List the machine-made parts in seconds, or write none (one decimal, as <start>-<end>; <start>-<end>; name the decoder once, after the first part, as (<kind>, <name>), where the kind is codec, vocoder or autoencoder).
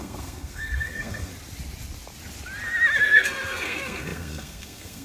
0.0-1.3 (codec, SNAC); 3.0-5.0